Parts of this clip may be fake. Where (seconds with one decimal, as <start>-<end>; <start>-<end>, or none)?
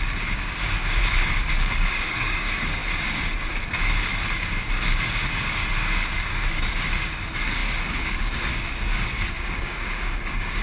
0.0-2.8; 3.5-10.6